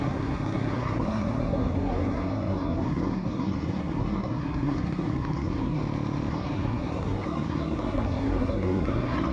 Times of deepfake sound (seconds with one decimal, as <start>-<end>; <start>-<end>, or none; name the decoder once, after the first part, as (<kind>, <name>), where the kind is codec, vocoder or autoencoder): 0.0-5.8 (codec, SNAC); 6.3-9.3